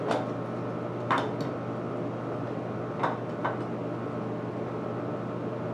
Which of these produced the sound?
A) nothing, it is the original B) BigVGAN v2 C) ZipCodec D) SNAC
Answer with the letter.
A